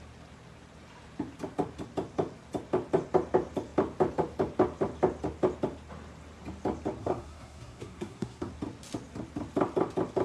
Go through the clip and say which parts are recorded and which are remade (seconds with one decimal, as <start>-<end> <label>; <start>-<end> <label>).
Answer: 0.0-7.0 recorded; 7.0-8.5 remade; 8.5-10.2 recorded